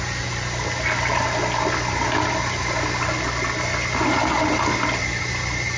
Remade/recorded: recorded